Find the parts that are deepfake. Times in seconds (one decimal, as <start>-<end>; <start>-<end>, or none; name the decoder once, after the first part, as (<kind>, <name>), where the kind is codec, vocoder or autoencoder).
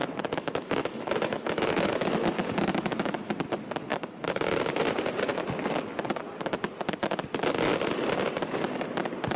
0.0-3.3 (autoencoder, DAC-VAE); 3.9-4.7